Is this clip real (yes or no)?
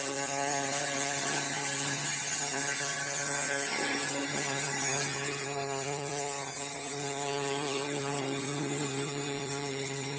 no